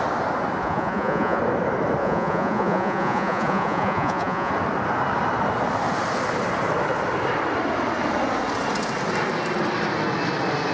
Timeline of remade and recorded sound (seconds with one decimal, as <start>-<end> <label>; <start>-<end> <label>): 0.0-0.6 recorded; 0.6-1.4 remade; 1.4-2.0 recorded; 2.0-4.5 remade; 4.5-10.7 recorded